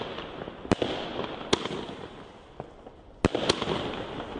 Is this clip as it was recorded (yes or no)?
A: yes